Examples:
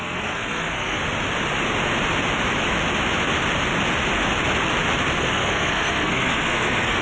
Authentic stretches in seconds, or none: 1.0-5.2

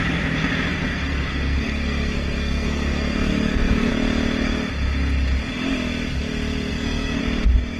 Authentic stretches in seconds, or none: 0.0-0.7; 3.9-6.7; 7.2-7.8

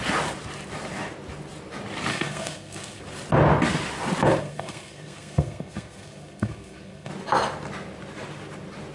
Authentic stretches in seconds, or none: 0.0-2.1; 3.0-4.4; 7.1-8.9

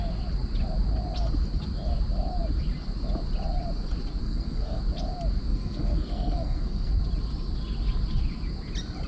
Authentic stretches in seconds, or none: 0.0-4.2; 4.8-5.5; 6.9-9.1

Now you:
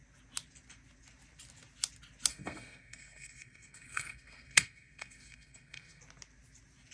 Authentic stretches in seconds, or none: 0.0-2.3; 6.0-6.9

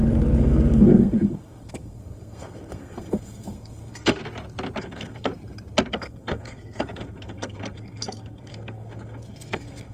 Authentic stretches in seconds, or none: 4.2-4.8; 5.3-5.9